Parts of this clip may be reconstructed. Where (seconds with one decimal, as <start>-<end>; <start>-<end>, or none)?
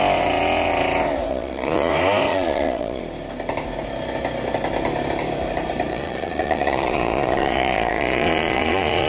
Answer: 1.3-1.9; 2.3-3.0; 5.9-9.1